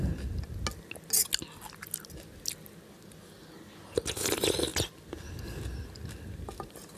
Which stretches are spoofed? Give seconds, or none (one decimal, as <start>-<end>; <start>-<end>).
none